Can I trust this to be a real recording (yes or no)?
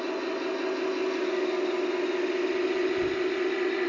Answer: yes